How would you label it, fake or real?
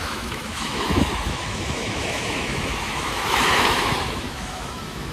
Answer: fake